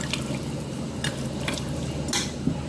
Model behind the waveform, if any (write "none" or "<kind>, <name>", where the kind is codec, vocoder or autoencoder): none